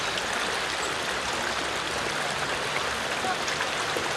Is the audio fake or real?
real